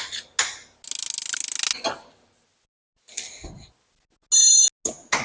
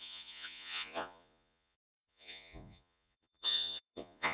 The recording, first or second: first